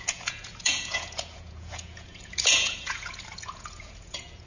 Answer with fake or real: fake